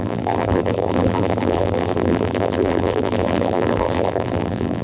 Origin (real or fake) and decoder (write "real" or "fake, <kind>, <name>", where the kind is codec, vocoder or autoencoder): fake, vocoder, BigVGAN v2